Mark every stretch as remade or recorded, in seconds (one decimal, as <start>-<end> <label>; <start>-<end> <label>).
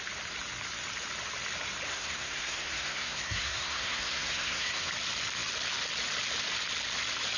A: 0.0-1.9 recorded; 1.9-4.9 remade; 4.9-7.4 recorded